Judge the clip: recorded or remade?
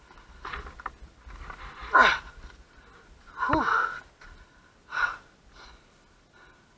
recorded